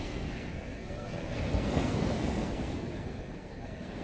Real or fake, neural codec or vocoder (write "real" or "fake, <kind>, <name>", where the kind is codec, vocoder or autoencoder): fake, codec, SNAC